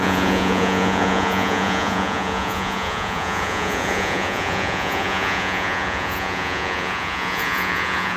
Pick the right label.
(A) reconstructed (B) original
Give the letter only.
A